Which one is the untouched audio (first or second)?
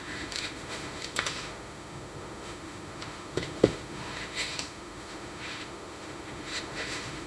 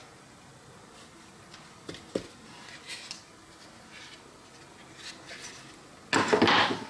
second